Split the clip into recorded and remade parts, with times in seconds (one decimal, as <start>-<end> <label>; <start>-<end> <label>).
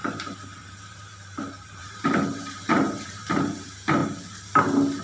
0.0-4.0 remade; 4.0-5.0 recorded